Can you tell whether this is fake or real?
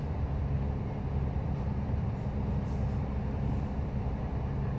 fake